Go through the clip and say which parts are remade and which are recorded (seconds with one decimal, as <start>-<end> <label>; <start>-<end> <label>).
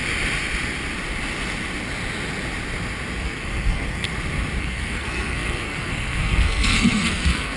0.0-3.2 recorded; 3.2-4.1 remade; 4.1-4.6 recorded; 4.6-7.6 remade